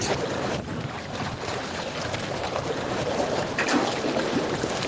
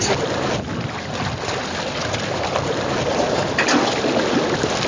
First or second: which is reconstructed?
first